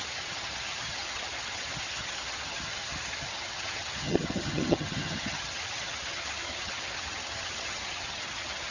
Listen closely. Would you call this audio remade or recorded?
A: remade